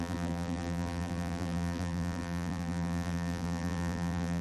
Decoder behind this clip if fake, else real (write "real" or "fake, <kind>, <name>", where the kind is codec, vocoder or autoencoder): fake, vocoder, BigVGAN v2